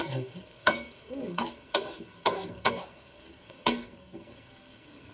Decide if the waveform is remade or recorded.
remade